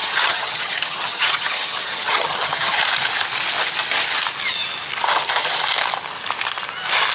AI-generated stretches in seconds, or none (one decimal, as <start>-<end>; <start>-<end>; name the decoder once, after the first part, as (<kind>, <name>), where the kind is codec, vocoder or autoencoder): 0.0-2.8 (vocoder, HiFi-GAN)